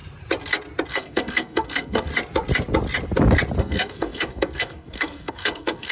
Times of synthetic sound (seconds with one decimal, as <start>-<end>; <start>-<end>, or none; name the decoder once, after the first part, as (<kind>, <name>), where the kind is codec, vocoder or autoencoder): 0.9-2.1 (codec, SNAC); 3.6-5.9